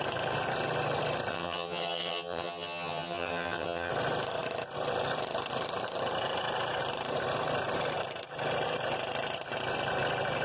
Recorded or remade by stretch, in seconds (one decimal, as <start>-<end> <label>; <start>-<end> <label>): 0.0-1.3 recorded; 1.3-3.9 remade; 3.9-10.4 recorded